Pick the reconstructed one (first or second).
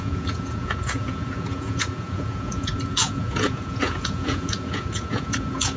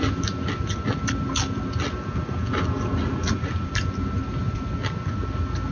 first